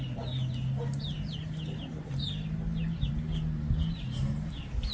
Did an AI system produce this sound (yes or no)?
no